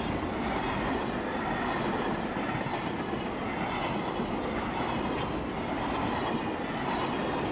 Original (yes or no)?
yes